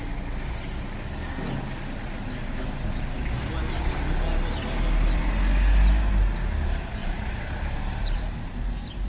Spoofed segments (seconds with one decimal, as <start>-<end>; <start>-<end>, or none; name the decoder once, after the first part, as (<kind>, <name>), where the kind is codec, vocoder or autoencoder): 7.0-9.1 (vocoder, BigVGAN v2)